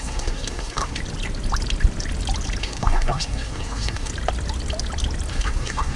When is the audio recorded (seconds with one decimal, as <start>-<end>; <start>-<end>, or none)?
1.0-2.6; 4.1-5.3